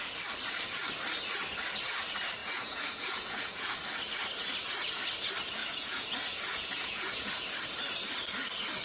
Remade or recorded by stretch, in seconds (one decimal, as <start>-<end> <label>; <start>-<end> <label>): 0.0-2.4 recorded; 2.4-3.8 remade; 3.8-5.6 recorded; 5.6-7.3 remade; 7.3-8.8 recorded